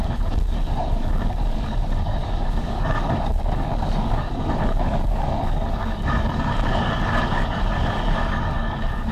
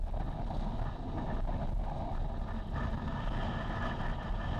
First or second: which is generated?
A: first